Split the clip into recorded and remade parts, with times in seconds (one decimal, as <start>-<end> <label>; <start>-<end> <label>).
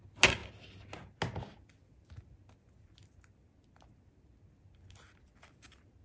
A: 0.0-6.0 recorded